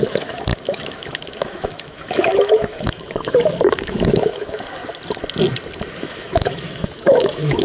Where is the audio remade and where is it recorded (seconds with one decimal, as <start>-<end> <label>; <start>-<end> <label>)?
0.0-4.8 remade; 4.8-5.9 recorded; 5.9-7.6 remade